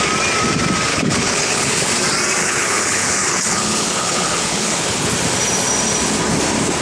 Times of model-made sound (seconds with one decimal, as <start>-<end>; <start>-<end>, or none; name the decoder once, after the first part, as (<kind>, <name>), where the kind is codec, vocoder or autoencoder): 0.9-1.9 (codec, HILCodec); 2.4-5.1